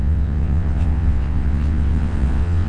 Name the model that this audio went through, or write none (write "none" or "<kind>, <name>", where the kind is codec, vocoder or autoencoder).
vocoder, WaveNeXt